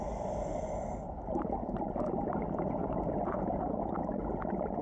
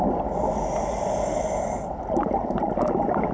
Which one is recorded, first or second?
second